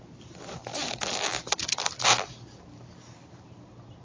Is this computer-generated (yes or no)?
no